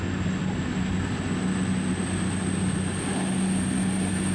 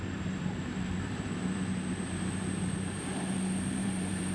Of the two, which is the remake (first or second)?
second